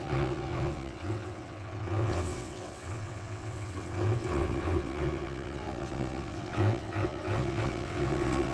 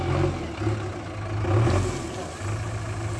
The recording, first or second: second